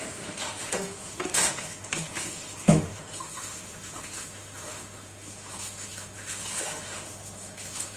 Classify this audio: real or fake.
fake